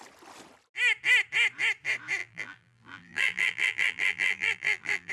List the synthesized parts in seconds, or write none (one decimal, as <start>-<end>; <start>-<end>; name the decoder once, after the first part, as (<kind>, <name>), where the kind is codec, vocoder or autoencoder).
2.2-5.1 (vocoder, BigVGAN v2)

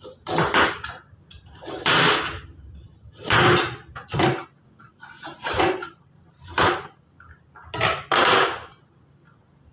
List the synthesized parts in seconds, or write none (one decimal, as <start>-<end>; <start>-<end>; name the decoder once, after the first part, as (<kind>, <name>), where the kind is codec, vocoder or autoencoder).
4.9-6.7 (vocoder, BigVGAN v2)

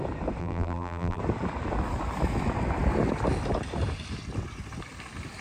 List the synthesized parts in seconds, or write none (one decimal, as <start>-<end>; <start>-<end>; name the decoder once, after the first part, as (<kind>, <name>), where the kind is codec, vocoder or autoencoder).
0.4-1.2 (vocoder, BigVGAN v2)

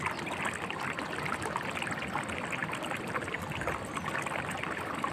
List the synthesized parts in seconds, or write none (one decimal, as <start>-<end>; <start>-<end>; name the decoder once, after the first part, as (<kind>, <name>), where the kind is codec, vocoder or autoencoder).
2.6-5.1 (vocoder, BigVGAN v2)

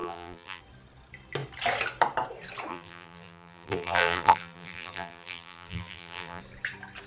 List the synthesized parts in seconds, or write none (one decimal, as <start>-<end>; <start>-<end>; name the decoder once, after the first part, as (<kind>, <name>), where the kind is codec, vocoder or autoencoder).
0.0-0.6 (vocoder, BigVGAN v2); 2.7-6.4